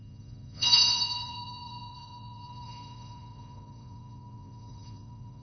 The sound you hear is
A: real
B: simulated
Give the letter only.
B